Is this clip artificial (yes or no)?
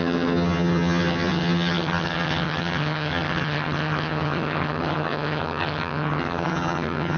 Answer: yes